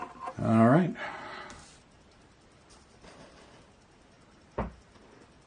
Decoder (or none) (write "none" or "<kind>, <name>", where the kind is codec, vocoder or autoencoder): none